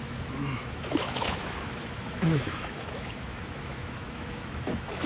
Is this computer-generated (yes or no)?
yes